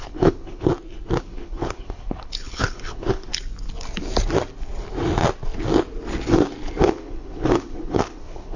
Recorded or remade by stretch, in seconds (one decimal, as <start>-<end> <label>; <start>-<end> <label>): 0.0-0.7 remade; 0.7-1.2 recorded; 1.2-3.3 remade; 3.3-6.8 recorded; 6.8-8.6 remade